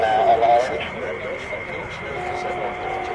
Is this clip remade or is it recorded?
recorded